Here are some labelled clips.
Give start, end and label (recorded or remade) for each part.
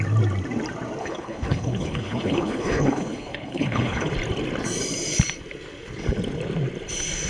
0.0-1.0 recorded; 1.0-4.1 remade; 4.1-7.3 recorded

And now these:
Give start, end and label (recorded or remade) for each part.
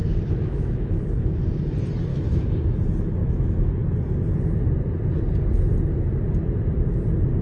0.0-1.1 remade; 1.1-2.1 recorded; 2.1-2.7 remade; 2.7-3.2 recorded; 3.2-3.7 remade; 3.7-7.4 recorded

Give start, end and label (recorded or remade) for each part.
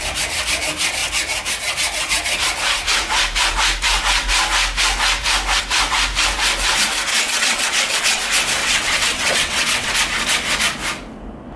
0.0-7.1 recorded; 7.1-8.2 remade; 8.2-8.6 recorded; 8.6-9.9 remade; 9.9-11.6 recorded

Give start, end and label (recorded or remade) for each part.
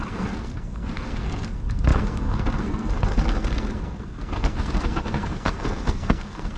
0.0-6.6 remade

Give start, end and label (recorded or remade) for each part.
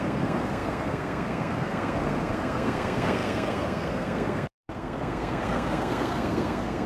0.0-6.9 remade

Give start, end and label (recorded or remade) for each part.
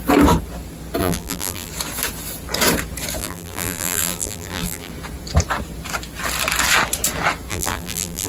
0.0-1.0 recorded; 1.0-1.7 remade; 1.7-3.2 recorded; 3.2-4.9 remade; 4.9-7.5 recorded; 7.5-8.3 remade